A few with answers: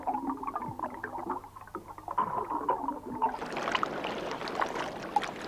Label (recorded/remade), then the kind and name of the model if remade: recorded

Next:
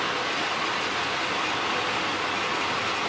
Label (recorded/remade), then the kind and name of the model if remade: recorded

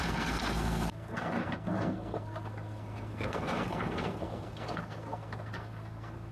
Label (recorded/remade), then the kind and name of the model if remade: remade, codec, SNAC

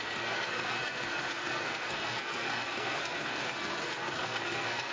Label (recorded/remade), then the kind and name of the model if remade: remade, codec, SNAC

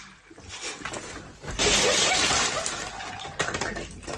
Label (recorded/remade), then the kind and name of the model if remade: recorded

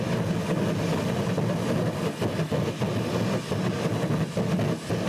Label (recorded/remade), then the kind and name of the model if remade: recorded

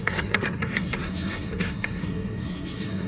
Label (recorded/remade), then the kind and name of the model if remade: remade, codec, SNAC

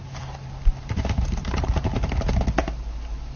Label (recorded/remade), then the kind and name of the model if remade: recorded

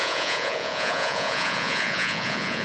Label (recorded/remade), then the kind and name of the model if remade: remade, vocoder, Vocos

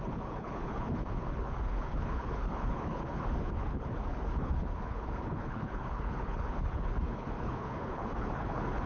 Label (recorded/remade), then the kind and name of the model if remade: remade, codec, HILCodec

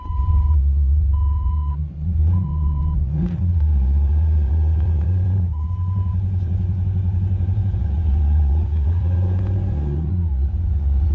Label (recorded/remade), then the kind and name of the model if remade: remade, vocoder, Vocos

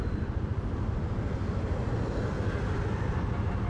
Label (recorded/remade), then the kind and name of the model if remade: recorded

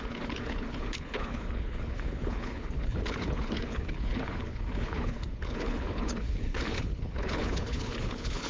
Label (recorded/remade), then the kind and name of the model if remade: remade, codec, HILCodec